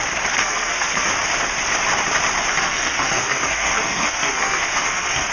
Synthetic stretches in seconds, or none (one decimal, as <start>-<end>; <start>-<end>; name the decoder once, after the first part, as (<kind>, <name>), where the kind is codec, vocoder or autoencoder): 0.4-1.1 (codec, SNAC); 2.5-5.3